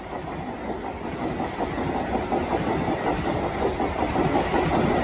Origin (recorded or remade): recorded